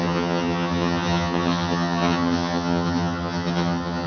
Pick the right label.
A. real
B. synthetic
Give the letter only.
B